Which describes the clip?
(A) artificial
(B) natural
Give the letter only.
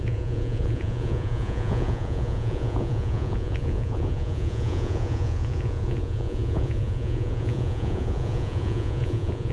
A